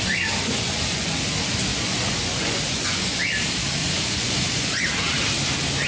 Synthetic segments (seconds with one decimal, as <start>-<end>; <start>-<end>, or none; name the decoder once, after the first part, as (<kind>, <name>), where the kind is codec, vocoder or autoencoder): 0.4-1.2 (vocoder, Vocos); 1.7-3.2; 3.8-4.8